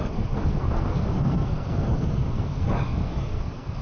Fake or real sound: fake